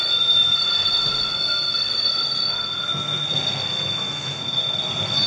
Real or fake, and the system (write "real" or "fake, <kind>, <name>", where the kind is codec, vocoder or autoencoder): fake, codec, SNAC